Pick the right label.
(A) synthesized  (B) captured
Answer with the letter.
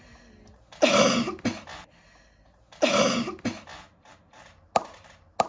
B